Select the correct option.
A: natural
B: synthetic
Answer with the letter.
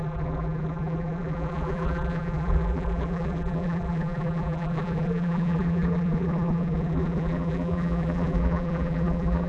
B